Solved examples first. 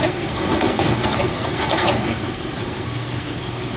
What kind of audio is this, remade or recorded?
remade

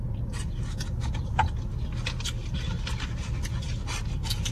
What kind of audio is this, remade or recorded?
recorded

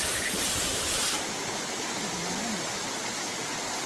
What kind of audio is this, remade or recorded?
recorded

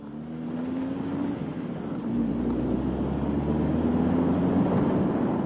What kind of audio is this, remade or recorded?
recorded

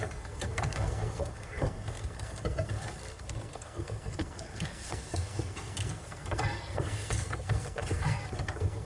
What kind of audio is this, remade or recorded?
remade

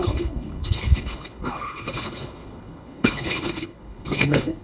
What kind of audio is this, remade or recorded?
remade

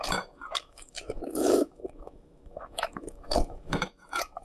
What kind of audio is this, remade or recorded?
remade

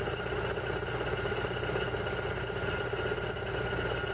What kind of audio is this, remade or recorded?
recorded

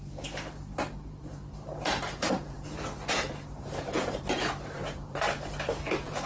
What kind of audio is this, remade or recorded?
remade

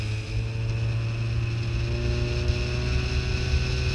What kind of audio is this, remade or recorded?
recorded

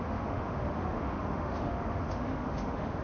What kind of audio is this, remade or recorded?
remade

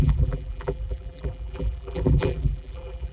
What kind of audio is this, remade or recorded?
remade